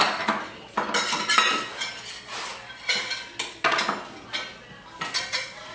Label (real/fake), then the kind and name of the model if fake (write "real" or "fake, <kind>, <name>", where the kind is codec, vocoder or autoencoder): real